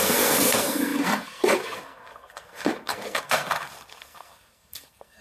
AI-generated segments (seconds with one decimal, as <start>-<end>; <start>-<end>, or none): 0.0-5.2